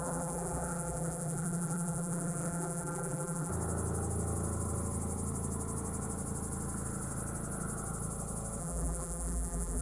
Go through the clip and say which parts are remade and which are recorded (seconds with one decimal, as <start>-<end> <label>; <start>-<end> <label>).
0.0-3.5 remade; 3.5-8.6 recorded; 8.6-9.8 remade